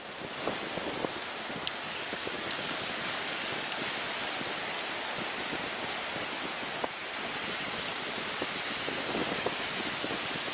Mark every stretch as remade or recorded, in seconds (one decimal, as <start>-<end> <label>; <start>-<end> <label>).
0.0-1.6 recorded; 1.6-3.8 remade; 3.8-10.5 recorded

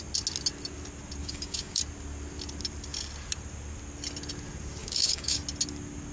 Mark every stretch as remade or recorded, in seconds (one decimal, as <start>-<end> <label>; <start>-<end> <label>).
0.0-1.2 recorded; 1.2-1.8 remade; 1.8-4.8 recorded; 4.8-5.4 remade; 5.4-6.1 recorded

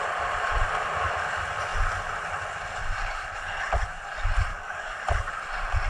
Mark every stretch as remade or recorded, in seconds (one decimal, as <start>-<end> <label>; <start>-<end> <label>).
0.0-4.5 recorded; 4.5-5.0 remade; 5.0-5.9 recorded